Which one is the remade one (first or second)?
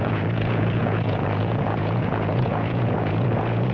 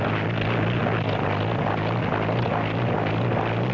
first